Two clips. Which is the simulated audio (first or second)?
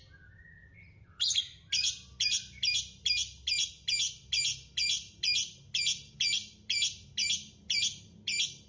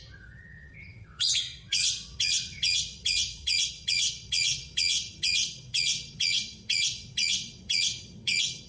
second